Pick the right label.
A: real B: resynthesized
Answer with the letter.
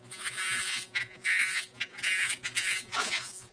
B